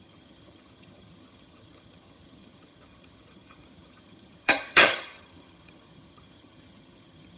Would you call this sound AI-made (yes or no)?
yes